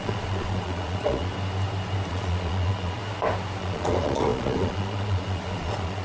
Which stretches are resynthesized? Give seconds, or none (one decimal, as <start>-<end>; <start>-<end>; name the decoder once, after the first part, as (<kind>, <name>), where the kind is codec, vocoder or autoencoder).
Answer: 0.0-1.3 (vocoder, Vocos); 2.1-3.0; 3.6-6.0